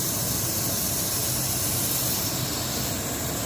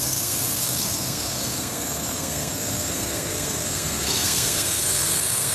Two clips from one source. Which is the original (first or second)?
first